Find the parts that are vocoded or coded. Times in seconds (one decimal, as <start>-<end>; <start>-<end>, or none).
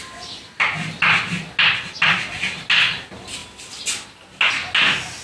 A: none